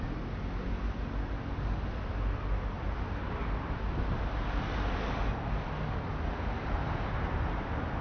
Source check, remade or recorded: recorded